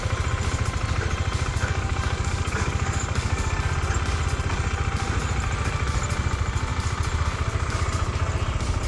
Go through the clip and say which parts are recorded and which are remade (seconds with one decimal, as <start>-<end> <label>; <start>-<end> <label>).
0.0-1.5 recorded; 1.5-3.5 remade; 3.5-8.9 recorded